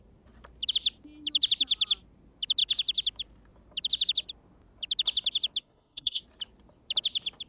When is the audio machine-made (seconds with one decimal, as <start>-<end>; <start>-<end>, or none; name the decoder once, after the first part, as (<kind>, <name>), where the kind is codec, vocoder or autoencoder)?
5.6-6.2 (codec, SNAC)